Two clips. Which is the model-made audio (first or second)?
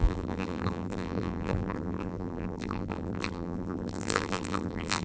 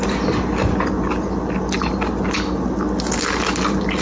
first